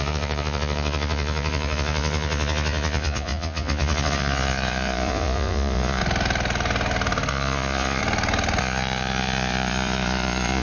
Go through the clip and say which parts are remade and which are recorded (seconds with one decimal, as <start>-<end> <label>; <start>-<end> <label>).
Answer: 0.0-6.0 remade; 6.0-7.3 recorded; 7.3-8.0 remade; 8.0-8.6 recorded; 8.6-10.6 remade